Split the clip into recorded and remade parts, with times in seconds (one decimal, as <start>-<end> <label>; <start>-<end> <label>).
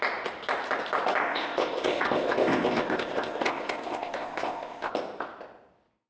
0.0-1.2 recorded; 1.2-4.9 remade; 4.9-6.1 recorded